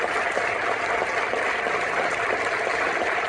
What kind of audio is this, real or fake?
real